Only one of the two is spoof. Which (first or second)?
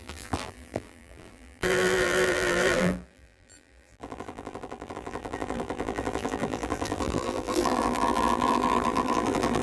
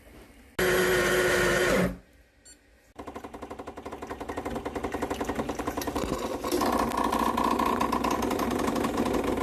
first